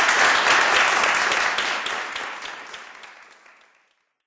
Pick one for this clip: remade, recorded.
recorded